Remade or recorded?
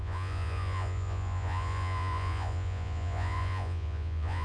remade